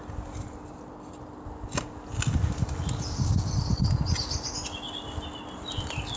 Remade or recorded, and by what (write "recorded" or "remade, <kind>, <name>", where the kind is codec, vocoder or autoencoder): recorded